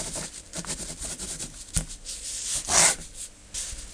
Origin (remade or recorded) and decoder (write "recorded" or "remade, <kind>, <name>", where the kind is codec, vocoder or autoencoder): recorded